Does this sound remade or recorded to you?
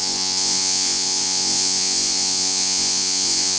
remade